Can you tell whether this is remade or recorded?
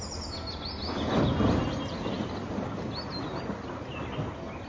recorded